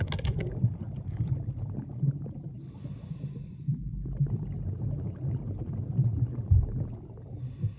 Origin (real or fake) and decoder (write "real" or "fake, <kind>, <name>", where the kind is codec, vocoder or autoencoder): real